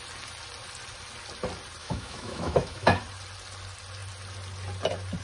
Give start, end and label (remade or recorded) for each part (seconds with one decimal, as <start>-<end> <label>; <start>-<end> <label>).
0.0-1.8 recorded; 1.8-3.0 remade; 3.0-5.2 recorded